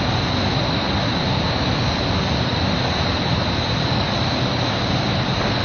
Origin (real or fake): real